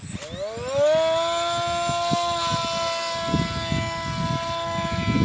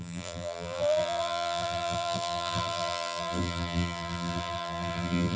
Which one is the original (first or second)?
first